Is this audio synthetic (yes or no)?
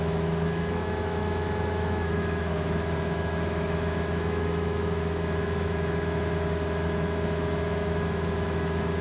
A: yes